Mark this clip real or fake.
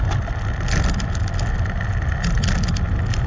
real